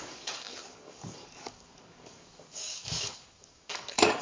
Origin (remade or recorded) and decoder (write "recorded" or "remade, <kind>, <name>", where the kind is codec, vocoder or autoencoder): remade, codec, DAC